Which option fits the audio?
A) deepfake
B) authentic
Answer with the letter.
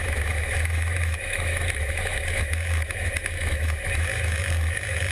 A